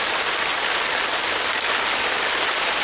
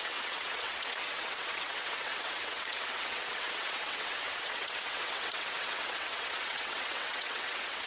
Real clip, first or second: first